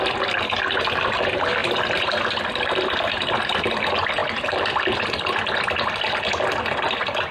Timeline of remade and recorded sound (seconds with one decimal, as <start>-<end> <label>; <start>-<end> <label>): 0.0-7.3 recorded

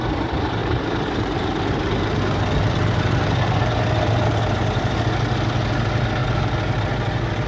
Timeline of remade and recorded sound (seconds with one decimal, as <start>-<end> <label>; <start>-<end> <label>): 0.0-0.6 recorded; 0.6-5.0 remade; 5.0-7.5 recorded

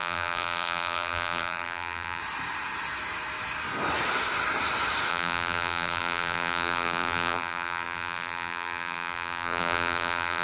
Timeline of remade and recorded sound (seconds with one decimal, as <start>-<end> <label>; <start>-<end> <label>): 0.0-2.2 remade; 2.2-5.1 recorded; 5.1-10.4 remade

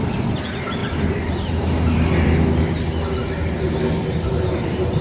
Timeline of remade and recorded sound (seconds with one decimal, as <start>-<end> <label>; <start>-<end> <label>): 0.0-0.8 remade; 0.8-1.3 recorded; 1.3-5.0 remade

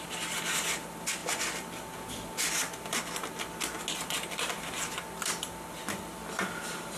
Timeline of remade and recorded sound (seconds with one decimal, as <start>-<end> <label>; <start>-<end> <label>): 0.0-7.0 recorded

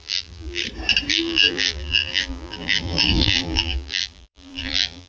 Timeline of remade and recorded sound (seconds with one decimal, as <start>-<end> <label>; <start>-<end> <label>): 0.0-0.6 remade; 0.6-1.1 recorded; 1.1-5.1 remade

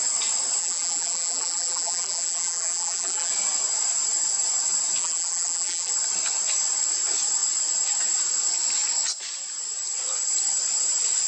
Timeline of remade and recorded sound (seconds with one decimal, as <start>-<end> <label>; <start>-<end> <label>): 0.0-0.6 recorded; 0.6-3.3 remade; 3.3-5.0 recorded; 5.0-5.9 remade; 5.9-11.3 recorded